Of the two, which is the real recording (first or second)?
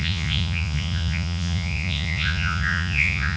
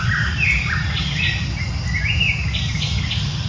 second